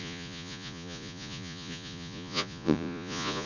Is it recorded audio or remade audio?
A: remade